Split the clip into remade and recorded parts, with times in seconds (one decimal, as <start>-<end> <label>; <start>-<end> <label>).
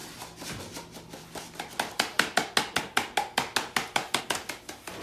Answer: 0.0-5.0 recorded